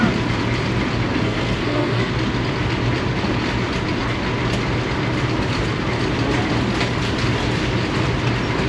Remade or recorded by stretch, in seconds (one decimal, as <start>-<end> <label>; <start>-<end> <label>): 0.0-1.1 recorded; 1.1-2.1 remade; 2.1-8.7 recorded